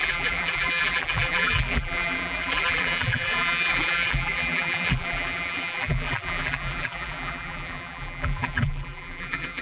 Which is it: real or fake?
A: fake